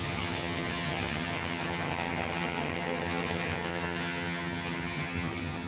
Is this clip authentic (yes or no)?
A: no